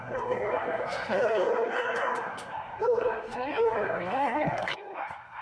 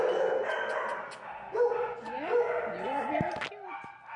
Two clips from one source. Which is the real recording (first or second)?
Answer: second